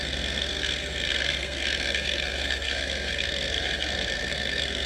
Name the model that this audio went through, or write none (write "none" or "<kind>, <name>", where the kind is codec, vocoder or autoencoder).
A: codec, SNAC